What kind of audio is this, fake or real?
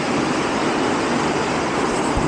real